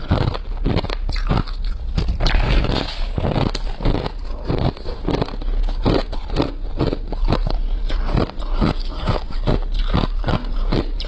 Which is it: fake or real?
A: real